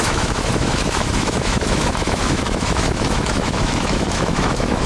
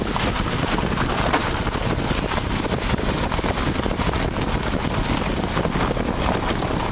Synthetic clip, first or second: first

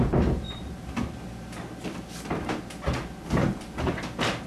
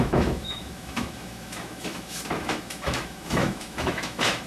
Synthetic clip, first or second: second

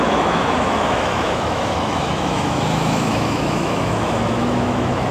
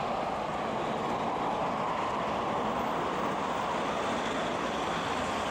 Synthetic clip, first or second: first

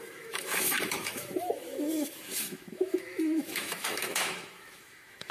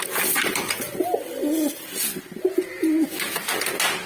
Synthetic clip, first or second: first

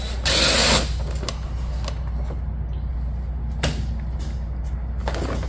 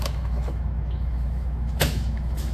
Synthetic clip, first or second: second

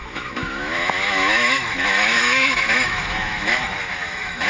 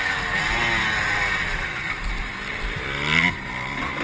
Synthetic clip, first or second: first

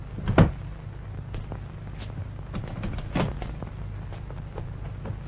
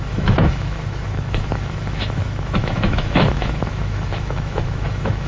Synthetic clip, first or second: second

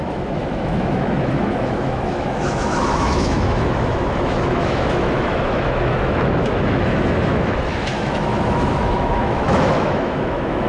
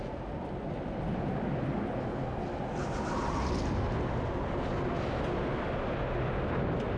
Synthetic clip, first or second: first